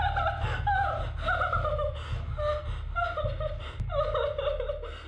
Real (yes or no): yes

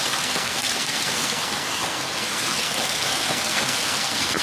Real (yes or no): no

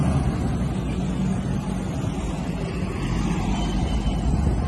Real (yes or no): yes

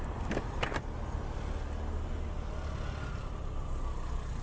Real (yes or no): yes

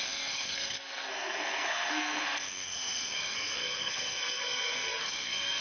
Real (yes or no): no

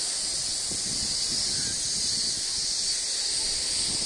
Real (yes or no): yes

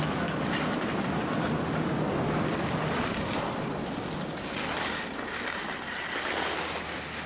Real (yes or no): yes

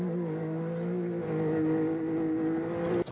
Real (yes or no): yes